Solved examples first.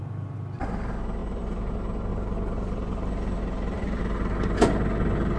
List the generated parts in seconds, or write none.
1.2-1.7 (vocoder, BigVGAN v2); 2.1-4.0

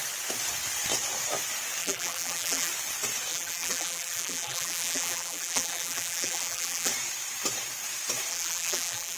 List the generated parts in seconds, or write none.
1.8-2.7 (vocoder, BigVGAN v2); 3.3-6.9; 8.3-9.2

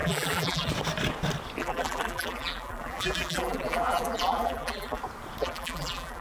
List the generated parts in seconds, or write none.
0.0-0.7 (vocoder, BigVGAN v2); 1.6-5.0; 5.4-6.2

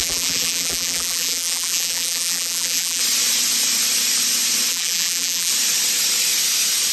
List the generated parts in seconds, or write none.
0.0-3.0 (vocoder, BigVGAN v2); 4.7-5.5